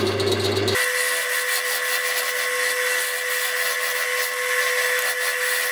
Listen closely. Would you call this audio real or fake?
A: real